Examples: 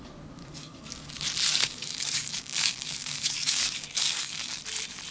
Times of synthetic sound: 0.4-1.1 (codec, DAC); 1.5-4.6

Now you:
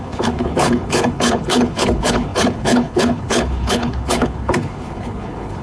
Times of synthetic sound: 0.0-5.6 (codec, HILCodec)